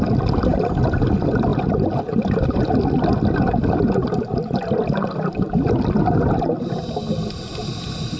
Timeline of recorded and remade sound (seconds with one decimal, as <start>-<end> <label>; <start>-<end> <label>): 0.0-8.2 recorded